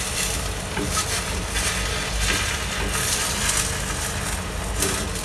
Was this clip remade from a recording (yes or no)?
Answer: no